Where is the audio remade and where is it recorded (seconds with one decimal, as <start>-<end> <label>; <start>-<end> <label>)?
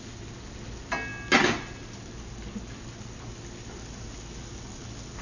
0.0-5.2 recorded